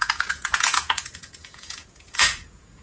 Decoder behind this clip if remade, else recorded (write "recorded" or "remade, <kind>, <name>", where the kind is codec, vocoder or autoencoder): remade, vocoder, Vocos